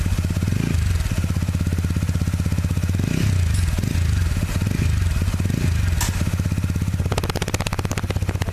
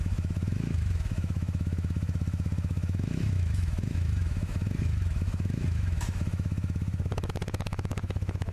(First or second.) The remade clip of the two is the second